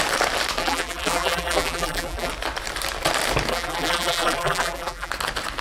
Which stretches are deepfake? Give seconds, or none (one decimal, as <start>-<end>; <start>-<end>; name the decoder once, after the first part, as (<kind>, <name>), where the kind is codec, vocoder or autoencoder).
0.6-2.3 (vocoder, BigVGAN v2); 3.5-5.1